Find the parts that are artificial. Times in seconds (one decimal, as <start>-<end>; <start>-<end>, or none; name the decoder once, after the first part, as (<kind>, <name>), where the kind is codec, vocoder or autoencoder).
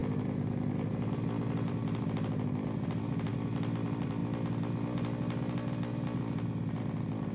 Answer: 0.0-4.2 (vocoder, BigVGAN v2); 6.8-7.3